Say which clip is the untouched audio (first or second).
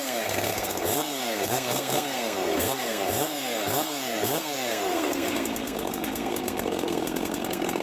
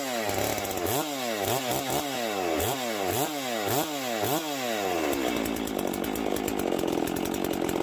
second